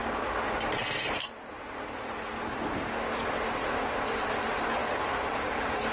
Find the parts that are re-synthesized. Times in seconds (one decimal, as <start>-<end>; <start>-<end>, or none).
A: none